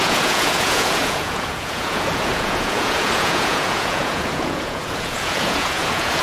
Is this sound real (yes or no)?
no